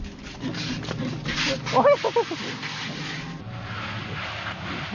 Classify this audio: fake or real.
real